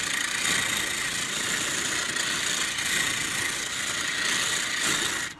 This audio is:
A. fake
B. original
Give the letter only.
B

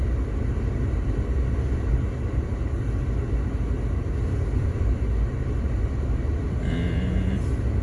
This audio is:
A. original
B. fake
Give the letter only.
A